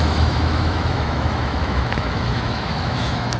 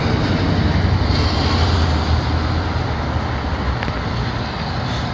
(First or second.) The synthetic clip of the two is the first